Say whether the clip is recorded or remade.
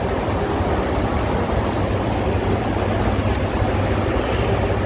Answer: recorded